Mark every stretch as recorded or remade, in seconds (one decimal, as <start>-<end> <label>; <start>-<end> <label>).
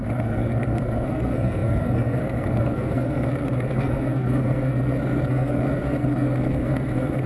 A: 0.0-7.3 remade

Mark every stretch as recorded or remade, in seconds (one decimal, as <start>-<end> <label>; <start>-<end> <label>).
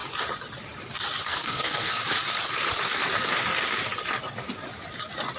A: 0.0-1.2 recorded; 1.2-2.0 remade; 2.0-5.4 recorded